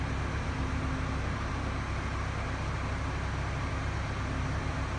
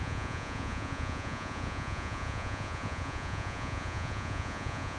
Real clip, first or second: first